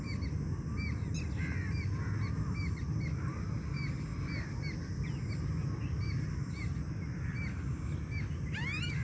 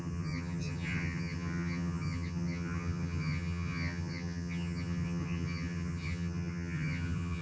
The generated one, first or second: second